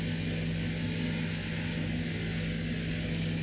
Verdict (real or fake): real